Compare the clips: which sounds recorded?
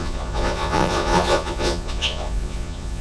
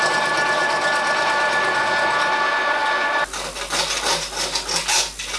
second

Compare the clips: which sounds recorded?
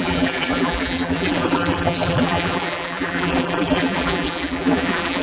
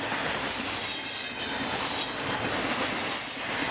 second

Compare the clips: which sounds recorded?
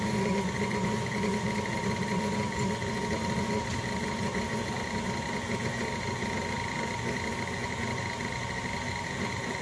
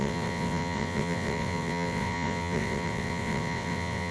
first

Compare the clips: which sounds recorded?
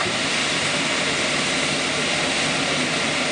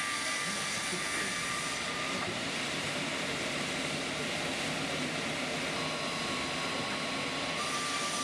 first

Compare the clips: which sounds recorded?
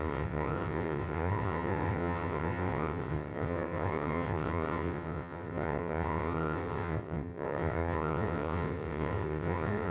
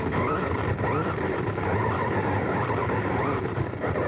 second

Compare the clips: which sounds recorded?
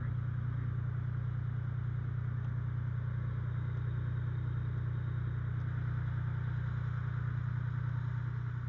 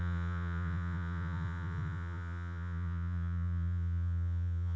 first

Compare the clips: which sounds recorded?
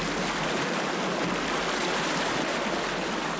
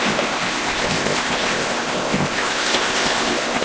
first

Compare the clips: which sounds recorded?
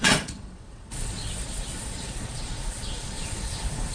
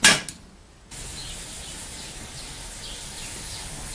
second